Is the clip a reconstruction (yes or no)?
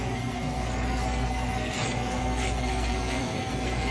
yes